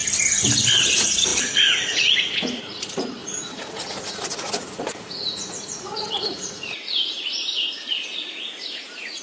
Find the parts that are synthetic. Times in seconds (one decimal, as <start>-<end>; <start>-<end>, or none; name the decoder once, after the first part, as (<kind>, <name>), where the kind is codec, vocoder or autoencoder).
0.8-9.2 (vocoder, Vocos)